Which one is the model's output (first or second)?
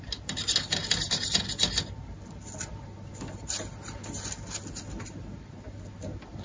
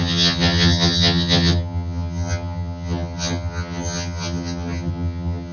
second